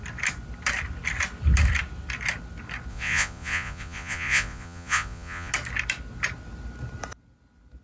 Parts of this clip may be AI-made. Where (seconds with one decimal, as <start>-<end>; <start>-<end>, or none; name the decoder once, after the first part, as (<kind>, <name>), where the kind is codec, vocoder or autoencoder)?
2.9-5.5 (vocoder, Vocos)